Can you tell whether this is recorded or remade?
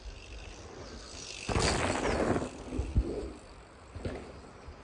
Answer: recorded